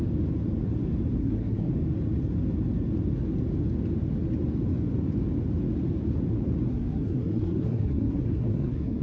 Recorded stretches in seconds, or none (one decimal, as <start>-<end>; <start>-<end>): 0.0-1.2; 1.7-6.7